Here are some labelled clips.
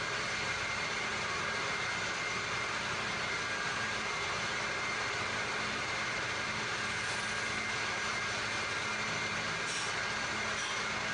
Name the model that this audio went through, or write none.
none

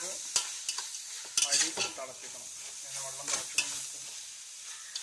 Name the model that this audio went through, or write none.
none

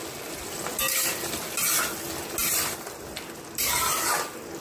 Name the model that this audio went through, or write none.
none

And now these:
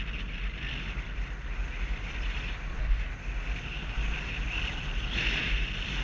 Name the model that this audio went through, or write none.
none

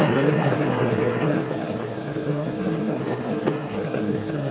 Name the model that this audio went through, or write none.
codec, SNAC